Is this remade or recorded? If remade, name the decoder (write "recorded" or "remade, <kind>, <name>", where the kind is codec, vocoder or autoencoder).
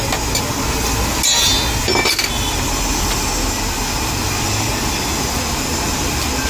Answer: recorded